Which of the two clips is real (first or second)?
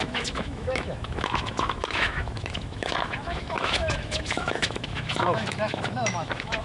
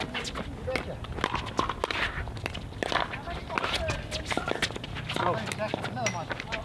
second